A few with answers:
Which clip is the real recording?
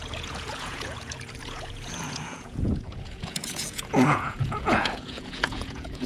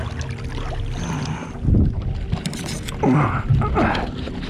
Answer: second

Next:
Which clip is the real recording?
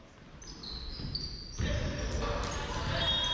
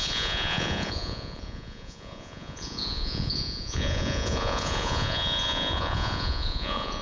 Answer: first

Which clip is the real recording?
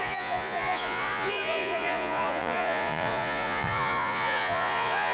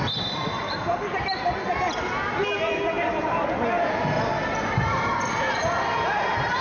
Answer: second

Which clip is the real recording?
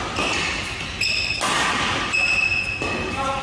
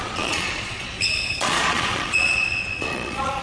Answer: first